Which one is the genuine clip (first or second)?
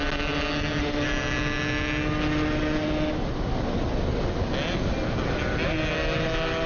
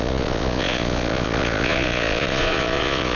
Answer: first